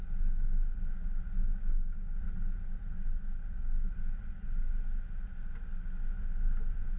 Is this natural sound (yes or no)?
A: yes